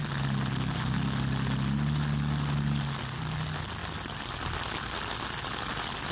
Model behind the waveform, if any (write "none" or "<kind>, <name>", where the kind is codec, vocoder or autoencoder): none